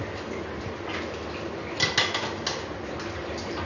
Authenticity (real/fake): real